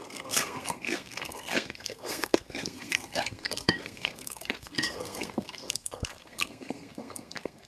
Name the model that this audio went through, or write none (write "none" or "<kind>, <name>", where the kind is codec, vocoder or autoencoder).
codec, SNAC